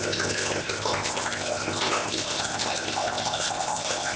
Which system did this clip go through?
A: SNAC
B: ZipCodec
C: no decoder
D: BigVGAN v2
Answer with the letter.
B